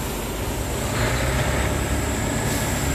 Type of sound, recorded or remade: recorded